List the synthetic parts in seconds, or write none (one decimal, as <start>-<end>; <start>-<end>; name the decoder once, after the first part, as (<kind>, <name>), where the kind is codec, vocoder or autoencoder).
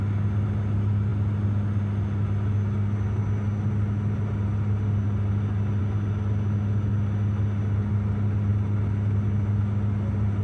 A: none